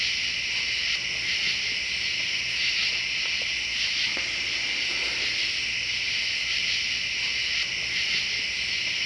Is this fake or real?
real